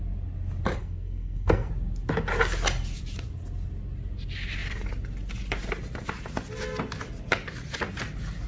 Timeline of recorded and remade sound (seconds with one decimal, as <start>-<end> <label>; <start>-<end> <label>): 0.0-0.8 recorded; 0.8-1.7 remade; 1.7-8.5 recorded